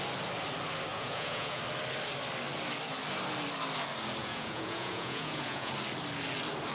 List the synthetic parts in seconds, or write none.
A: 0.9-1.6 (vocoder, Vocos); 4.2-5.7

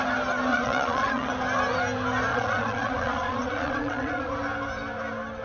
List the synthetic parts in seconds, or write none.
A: 0.5-1.3 (vocoder, Vocos); 2.3-4.3

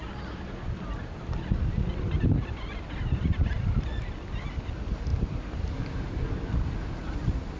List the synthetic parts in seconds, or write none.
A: none